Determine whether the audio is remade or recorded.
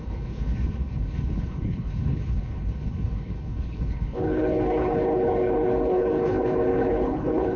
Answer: remade